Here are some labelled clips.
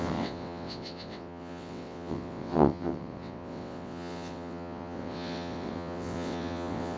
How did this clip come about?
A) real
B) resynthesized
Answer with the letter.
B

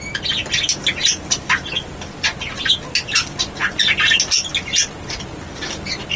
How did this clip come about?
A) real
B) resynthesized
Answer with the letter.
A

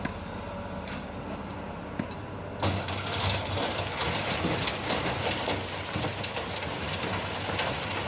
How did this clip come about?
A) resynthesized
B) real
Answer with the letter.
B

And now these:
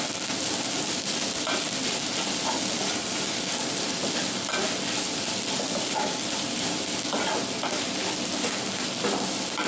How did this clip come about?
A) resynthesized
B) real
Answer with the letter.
B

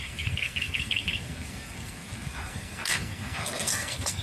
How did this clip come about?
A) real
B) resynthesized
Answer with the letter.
B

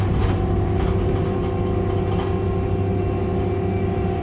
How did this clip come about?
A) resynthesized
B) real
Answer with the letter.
B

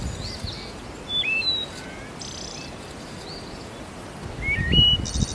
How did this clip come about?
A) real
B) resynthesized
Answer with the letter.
A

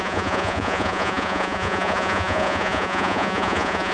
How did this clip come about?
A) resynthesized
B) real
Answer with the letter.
A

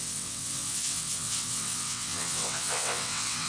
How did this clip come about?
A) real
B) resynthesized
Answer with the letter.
B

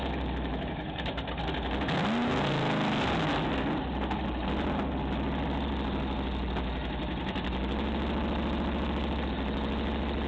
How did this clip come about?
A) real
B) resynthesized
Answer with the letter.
A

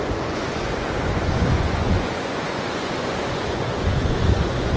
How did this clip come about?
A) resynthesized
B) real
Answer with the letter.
A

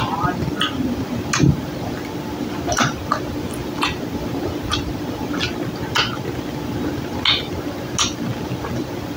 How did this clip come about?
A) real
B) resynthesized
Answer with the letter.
A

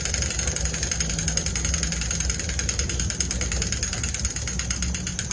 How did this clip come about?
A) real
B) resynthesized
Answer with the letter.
A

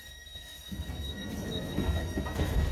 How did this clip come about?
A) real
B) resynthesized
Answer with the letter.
B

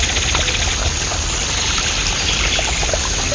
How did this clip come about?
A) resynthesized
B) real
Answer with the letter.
B